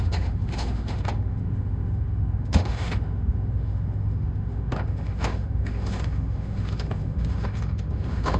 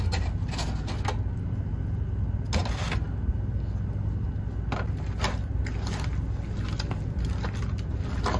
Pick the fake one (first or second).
first